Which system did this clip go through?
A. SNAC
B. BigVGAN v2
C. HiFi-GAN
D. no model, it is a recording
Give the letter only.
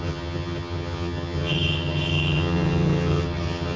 C